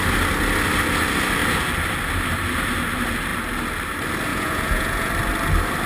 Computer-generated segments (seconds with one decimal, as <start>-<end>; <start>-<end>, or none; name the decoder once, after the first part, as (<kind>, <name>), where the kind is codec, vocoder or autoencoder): 4.3-5.1 (vocoder, Vocos)